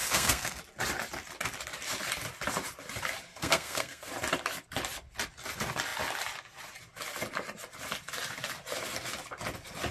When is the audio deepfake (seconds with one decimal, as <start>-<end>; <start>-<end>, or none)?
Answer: 0.0-0.6; 3.3-4.1